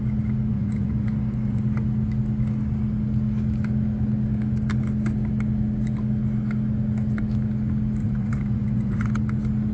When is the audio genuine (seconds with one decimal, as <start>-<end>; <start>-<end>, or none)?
0.0-0.5; 1.6-8.0; 9.1-9.7